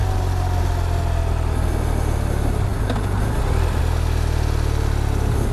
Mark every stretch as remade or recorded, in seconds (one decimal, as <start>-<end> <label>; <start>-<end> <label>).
0.0-5.5 recorded

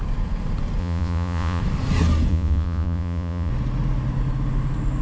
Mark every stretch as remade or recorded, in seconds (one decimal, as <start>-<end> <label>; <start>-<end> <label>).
0.0-0.8 recorded; 0.8-1.6 remade; 1.6-2.3 recorded; 2.3-3.5 remade; 3.5-5.0 recorded